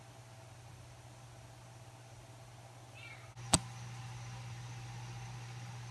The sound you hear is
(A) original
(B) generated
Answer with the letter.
A